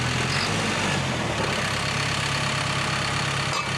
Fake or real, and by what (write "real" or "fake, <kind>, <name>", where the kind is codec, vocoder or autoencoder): real